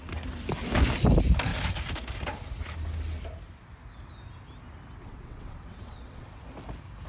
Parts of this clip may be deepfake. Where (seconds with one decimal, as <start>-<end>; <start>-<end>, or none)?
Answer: 5.0-6.4